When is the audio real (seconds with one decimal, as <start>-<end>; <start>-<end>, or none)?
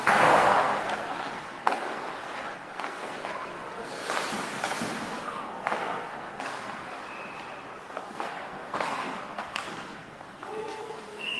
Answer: 4.0-5.2; 7.0-7.8